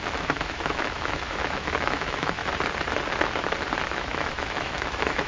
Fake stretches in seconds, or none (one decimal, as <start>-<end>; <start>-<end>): 0.0-2.4; 3.9-5.3